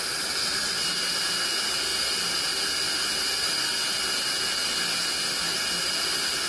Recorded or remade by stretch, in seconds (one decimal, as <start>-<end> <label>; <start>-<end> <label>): 0.0-6.5 recorded